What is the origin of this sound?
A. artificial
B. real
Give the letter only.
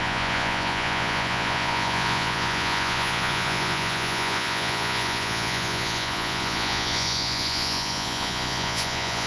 A